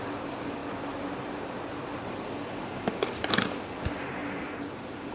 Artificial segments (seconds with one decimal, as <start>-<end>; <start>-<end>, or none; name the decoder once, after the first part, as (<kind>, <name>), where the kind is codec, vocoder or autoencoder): 0.6-2.3 (vocoder, BigVGAN v2); 4.2-5.1